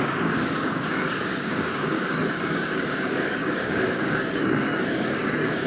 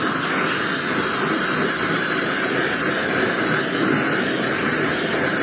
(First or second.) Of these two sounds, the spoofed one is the first